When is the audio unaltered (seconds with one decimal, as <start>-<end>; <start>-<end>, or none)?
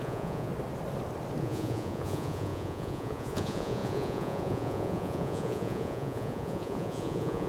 0.5-1.4